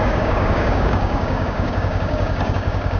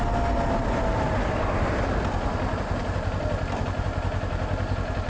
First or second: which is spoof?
first